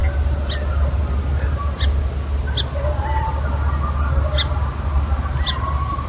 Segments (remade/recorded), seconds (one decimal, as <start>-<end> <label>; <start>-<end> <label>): 0.0-6.1 recorded